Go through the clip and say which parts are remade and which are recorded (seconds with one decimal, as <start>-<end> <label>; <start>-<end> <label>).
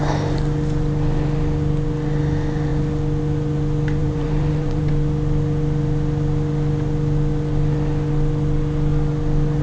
0.0-4.0 recorded; 4.0-4.9 remade; 4.9-9.6 recorded